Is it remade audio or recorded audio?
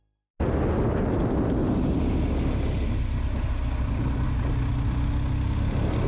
recorded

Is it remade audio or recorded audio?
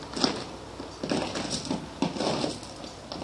recorded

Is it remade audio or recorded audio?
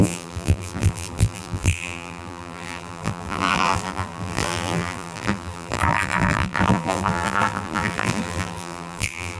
remade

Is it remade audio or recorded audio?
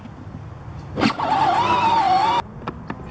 recorded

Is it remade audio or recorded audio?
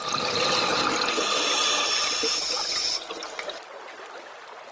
recorded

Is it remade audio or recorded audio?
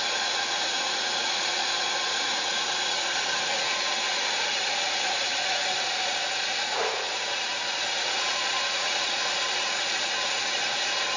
remade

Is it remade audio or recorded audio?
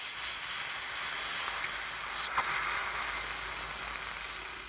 recorded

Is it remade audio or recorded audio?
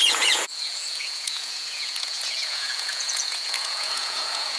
remade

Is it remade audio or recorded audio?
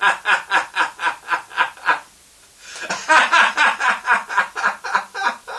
recorded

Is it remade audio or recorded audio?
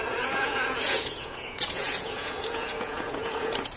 remade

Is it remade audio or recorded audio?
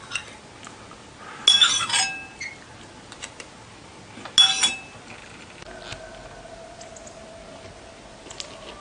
recorded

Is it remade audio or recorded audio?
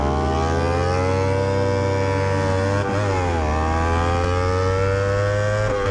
recorded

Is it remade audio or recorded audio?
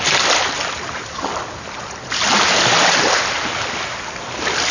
recorded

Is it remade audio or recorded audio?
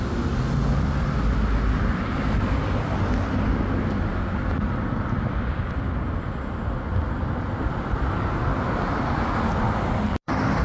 recorded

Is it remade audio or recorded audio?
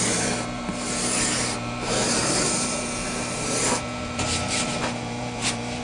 remade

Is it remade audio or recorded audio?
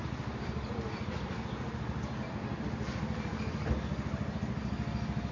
recorded